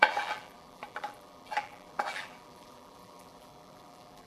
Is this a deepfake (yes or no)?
yes